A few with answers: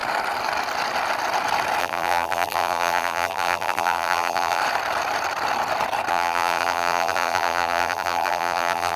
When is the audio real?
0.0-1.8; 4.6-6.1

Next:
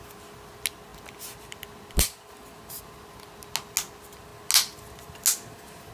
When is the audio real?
0.0-5.9

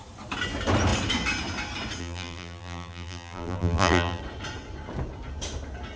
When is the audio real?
0.0-2.0; 4.2-6.0